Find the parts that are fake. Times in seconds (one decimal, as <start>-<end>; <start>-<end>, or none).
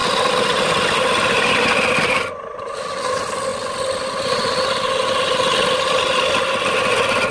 none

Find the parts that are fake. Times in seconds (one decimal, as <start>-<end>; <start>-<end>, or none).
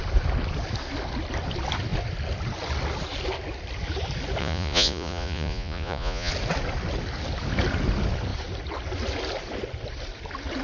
4.4-6.3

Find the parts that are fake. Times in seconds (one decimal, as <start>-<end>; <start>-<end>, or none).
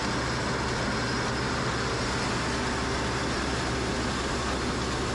none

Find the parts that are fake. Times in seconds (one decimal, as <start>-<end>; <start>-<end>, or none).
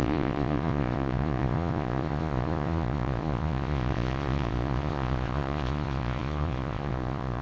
0.0-7.4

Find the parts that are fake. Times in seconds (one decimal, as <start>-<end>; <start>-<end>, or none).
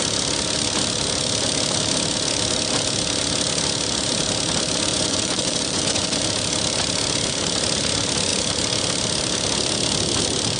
4.9-6.2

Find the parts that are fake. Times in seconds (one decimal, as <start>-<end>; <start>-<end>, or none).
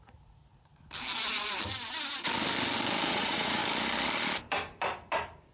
0.0-0.4; 3.1-3.6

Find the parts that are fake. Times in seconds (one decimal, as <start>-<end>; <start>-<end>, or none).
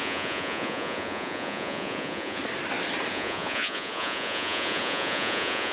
0.0-2.4; 3.1-5.7